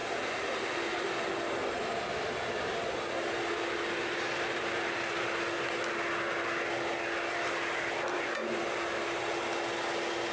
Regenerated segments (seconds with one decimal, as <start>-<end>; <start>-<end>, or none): none